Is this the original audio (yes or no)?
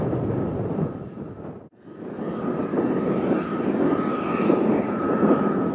yes